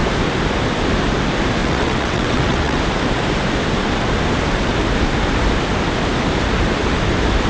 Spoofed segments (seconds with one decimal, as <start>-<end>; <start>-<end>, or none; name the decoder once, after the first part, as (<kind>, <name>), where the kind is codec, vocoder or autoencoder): 1.6-2.8 (vocoder, WaveNeXt)